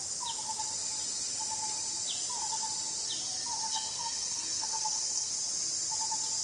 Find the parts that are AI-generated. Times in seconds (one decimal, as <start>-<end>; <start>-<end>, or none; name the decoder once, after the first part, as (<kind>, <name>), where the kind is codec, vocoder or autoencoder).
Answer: 3.7-5.3 (codec, SNAC)